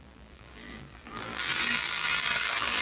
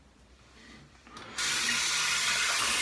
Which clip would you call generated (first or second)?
first